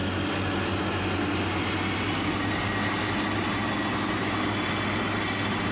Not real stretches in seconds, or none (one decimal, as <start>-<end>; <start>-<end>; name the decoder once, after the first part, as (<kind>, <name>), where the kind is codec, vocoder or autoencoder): none